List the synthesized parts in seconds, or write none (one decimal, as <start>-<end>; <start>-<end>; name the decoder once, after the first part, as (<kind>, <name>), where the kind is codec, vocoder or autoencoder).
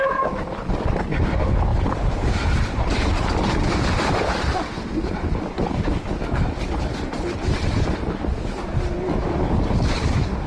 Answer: 1.7-2.9 (vocoder, BigVGAN v2)